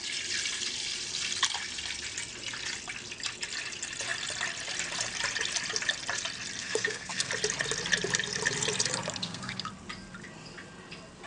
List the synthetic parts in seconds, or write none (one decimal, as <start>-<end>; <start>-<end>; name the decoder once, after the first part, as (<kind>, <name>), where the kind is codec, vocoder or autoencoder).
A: 6.6-7.3 (codec, SNAC); 9.2-9.7